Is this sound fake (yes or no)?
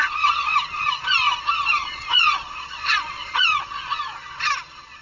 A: yes